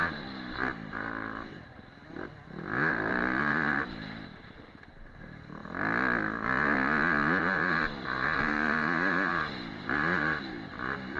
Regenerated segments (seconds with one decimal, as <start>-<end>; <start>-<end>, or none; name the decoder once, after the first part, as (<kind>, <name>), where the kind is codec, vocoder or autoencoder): 0.0-1.7 (vocoder, BigVGAN v2); 3.1-5.6; 7.4-11.2